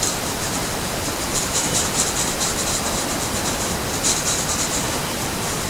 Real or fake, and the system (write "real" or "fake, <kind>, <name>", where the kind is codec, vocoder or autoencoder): fake, vocoder, BigVGAN v2